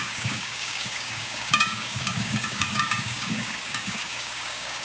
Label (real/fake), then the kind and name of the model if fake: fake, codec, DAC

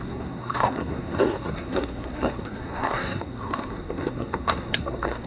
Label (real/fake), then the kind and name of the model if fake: fake, codec, SNAC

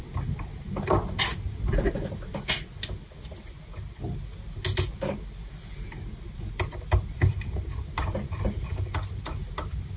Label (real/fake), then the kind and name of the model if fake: real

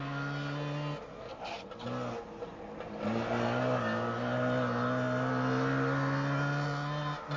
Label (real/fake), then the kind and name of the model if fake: real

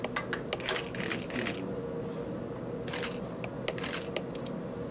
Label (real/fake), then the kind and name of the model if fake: real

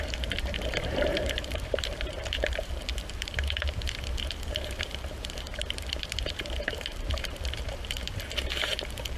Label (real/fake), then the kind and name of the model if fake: fake, vocoder, BigVGAN v2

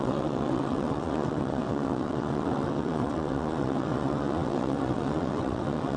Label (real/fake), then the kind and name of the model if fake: fake, vocoder, WaveNeXt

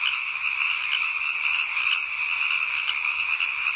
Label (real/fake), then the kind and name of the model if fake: real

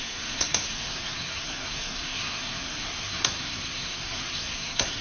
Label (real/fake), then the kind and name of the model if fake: fake, codec, SNAC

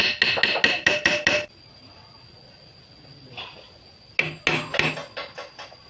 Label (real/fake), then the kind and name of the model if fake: real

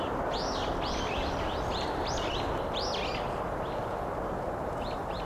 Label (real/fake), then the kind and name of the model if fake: real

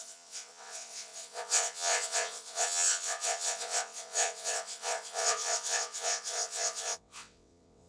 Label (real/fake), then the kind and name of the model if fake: fake, vocoder, WaveNeXt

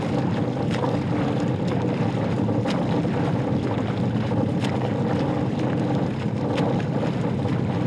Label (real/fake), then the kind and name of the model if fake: real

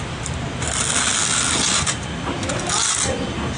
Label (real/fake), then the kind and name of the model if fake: real